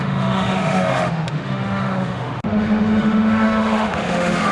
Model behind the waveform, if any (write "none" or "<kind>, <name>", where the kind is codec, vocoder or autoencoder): autoencoder, DAC-VAE